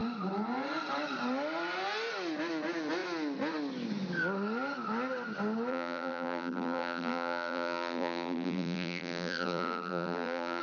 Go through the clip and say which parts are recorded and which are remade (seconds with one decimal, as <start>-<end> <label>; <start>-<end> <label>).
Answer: 0.0-5.7 recorded; 5.7-10.6 remade